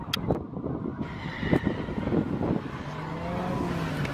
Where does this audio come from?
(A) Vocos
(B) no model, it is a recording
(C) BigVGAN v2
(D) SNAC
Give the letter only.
B